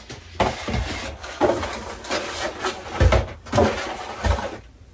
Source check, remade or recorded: recorded